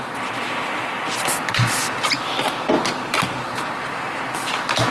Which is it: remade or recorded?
recorded